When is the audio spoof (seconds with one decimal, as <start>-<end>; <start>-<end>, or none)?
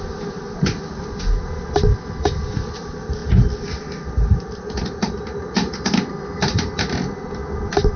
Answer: none